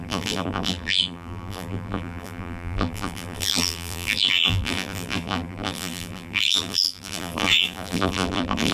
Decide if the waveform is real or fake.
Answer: fake